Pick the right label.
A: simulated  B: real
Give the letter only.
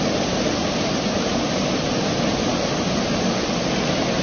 B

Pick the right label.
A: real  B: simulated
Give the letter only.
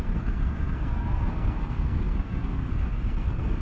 B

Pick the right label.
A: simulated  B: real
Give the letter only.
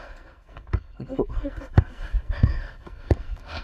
A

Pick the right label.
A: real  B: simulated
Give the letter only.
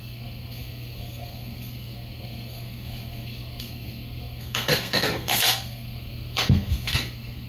B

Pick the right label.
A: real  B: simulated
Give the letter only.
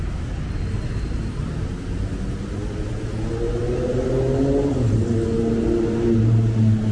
A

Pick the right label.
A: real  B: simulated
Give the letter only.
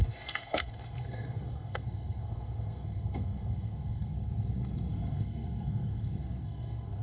B